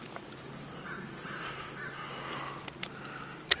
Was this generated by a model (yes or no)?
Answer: no